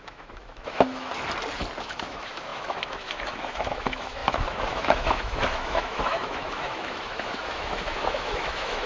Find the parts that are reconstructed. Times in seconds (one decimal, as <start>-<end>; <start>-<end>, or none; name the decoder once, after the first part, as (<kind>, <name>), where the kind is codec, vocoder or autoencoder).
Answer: 0.0-1.1 (autoencoder, DAC-VAE); 1.8-8.9